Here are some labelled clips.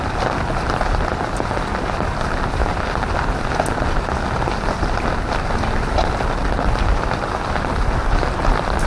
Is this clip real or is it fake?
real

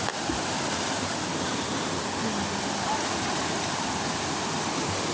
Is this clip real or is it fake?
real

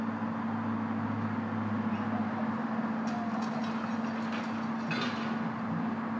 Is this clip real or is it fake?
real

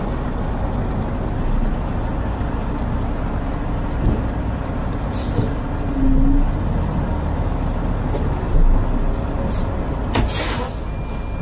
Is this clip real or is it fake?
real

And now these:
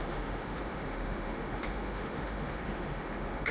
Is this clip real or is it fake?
fake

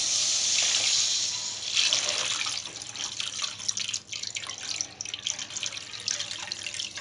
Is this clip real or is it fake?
real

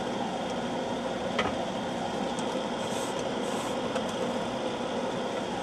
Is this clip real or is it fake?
fake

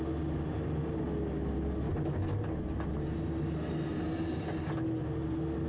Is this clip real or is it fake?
real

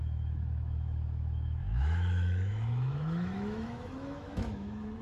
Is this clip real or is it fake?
fake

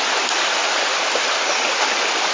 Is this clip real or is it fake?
real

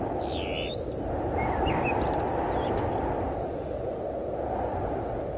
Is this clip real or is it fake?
real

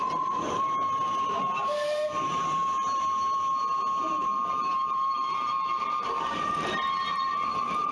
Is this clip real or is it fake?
fake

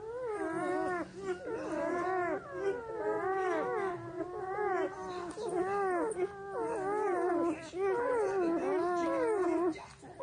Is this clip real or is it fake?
real